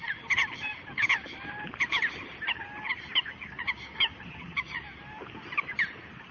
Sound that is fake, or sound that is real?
real